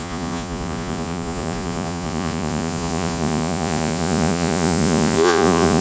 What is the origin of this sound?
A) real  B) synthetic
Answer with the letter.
B